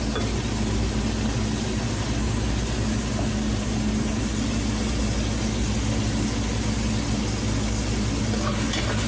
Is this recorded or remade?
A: recorded